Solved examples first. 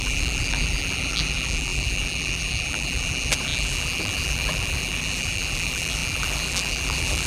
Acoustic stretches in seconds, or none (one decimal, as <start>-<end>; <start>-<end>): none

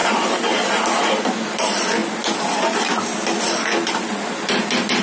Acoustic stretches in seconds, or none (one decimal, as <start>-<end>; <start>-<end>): 0.0-5.0

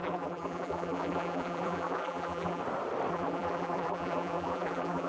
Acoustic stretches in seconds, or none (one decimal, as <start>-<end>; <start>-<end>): 2.6-3.1